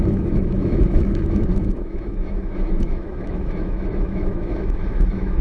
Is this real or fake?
fake